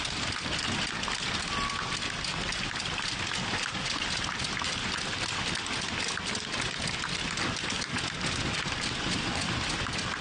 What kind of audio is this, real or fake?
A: real